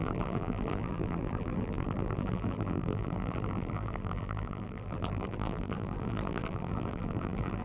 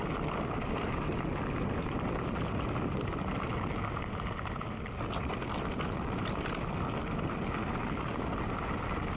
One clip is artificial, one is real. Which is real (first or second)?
second